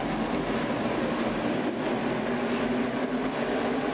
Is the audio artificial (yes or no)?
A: no